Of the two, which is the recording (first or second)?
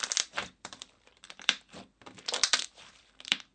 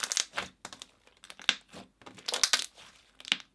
second